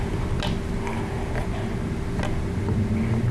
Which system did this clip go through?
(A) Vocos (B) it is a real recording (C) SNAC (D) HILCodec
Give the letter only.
B